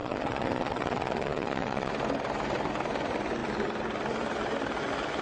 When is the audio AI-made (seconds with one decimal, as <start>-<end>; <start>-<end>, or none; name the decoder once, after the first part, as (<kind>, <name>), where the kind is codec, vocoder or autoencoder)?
0.0-1.9 (vocoder, Vocos)